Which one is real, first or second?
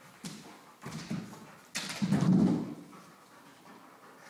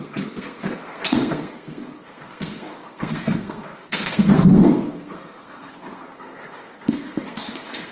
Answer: first